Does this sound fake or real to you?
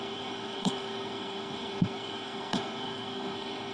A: fake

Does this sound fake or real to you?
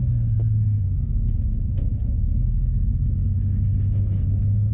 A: fake